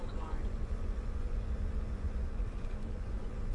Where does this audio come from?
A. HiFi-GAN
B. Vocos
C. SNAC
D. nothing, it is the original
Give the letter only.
B